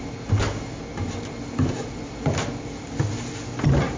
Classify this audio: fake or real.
real